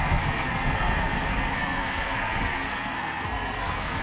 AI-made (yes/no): yes